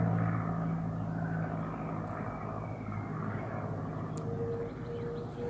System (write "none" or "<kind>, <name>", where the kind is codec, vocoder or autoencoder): none